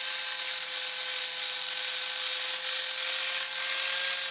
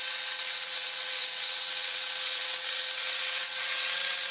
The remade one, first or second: second